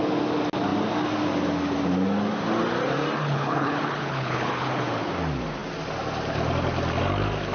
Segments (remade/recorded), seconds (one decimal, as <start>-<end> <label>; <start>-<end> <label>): 0.0-3.2 recorded; 3.2-5.1 remade; 5.1-7.5 recorded